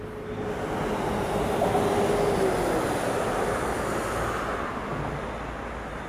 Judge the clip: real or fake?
real